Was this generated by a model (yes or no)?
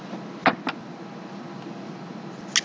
no